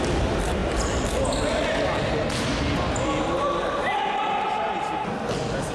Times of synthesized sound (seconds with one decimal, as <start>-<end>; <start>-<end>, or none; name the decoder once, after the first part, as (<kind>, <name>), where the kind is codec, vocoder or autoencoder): none